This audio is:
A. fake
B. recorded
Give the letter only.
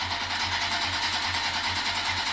B